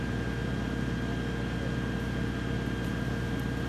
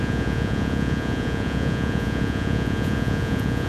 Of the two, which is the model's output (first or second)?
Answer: second